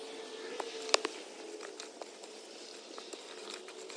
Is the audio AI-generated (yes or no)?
no